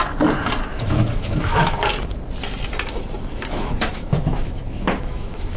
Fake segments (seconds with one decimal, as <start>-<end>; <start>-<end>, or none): 0.7-1.9; 3.3-5.6